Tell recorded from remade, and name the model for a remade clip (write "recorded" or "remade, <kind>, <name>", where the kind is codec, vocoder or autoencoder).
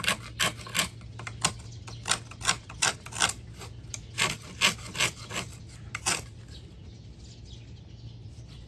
recorded